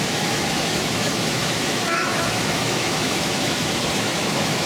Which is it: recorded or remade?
remade